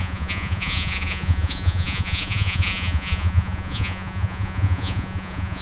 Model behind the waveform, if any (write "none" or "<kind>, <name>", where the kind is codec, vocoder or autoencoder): vocoder, Vocos